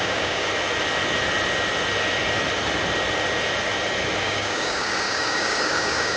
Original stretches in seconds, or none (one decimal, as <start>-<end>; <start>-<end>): 0.5-4.2